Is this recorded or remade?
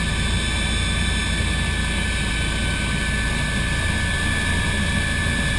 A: recorded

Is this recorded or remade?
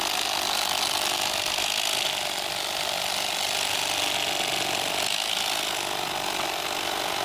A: recorded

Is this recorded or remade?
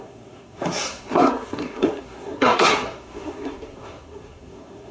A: remade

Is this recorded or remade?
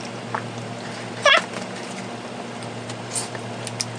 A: recorded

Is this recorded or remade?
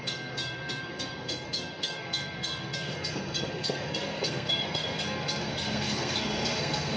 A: remade